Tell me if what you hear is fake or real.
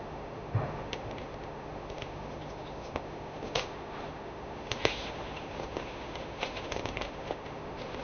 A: fake